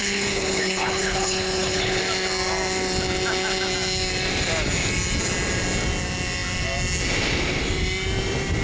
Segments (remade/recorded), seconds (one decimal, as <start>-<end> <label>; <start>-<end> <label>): 0.0-2.0 remade; 2.0-8.6 recorded